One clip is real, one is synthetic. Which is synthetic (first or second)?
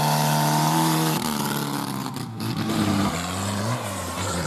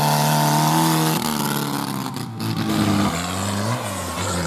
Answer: first